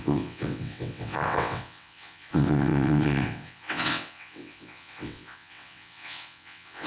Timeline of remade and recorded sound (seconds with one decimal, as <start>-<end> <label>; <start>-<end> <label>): 0.0-6.9 remade